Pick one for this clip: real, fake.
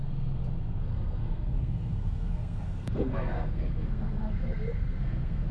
fake